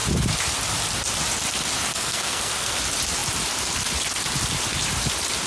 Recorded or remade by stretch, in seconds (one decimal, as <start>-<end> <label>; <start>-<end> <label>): 0.0-1.9 recorded; 1.9-2.8 remade; 2.8-5.5 recorded